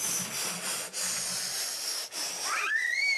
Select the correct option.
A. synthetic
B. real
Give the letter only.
B